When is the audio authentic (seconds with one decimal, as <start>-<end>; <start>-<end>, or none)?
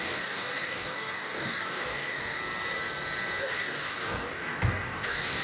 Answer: 2.4-3.4